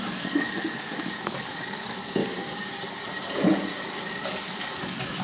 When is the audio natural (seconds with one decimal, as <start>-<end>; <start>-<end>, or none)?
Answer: 2.2-3.8